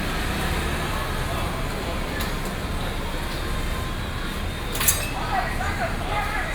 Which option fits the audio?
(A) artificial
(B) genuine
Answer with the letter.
B